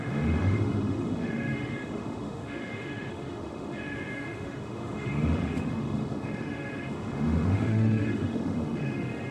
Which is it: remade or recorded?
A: remade